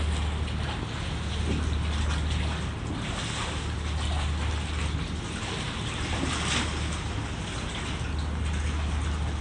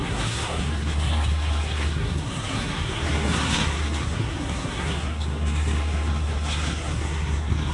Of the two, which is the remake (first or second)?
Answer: second